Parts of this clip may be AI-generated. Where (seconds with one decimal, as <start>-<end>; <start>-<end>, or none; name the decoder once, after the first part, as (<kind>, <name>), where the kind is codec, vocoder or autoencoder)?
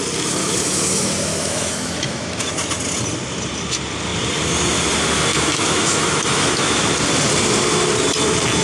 0.4-2.5 (autoencoder, DAC-VAE); 5.3-6.8